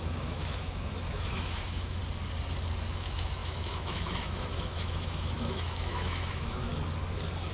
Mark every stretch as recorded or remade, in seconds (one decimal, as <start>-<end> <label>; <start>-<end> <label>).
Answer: 0.0-2.0 remade; 2.0-2.9 recorded; 2.9-6.7 remade; 6.7-7.5 recorded